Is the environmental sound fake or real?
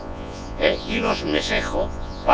fake